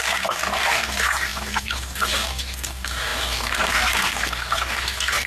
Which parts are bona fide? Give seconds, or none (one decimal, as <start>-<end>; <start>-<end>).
none